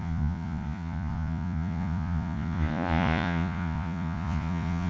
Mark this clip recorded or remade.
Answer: remade